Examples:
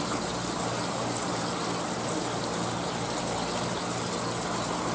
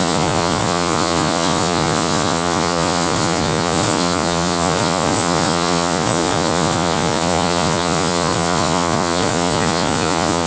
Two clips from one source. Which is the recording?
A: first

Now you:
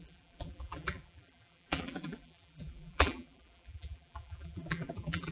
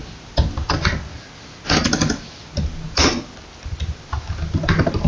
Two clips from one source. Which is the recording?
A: second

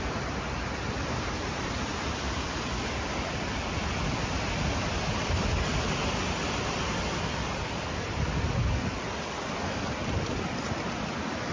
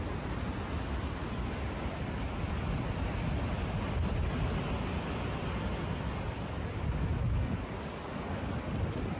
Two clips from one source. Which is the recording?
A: second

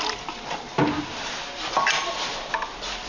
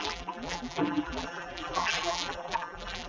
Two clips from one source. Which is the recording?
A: first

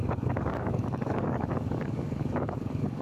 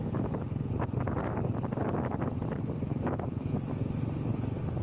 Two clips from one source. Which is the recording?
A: second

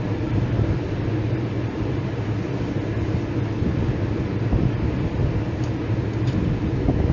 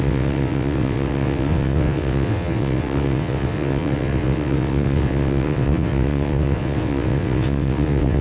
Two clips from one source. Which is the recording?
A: first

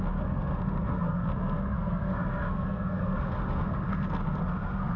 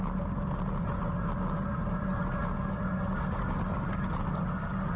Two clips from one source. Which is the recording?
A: second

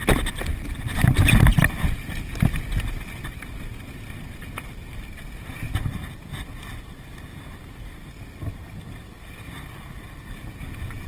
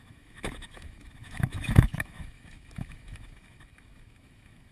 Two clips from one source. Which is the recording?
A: first